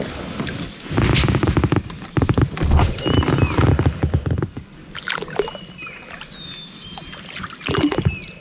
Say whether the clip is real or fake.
real